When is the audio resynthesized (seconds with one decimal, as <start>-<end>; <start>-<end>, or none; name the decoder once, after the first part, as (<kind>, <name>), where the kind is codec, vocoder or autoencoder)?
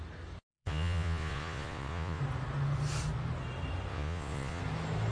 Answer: 0.5-2.2 (vocoder, Vocos); 3.9-4.6